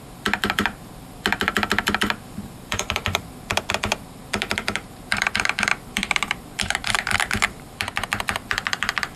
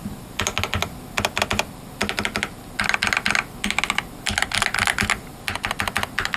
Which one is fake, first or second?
first